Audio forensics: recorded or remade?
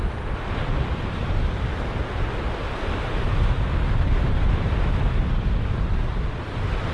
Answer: recorded